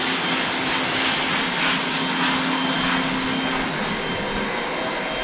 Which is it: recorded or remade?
recorded